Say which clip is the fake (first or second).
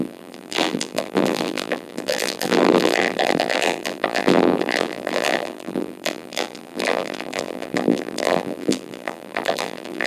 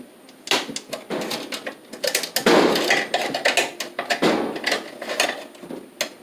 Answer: first